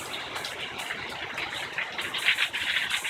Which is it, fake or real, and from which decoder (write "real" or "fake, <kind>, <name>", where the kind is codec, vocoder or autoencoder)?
real